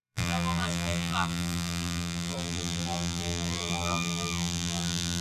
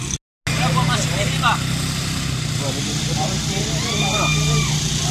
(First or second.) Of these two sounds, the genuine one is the second